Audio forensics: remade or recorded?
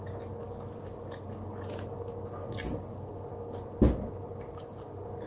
recorded